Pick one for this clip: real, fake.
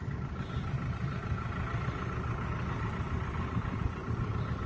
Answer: real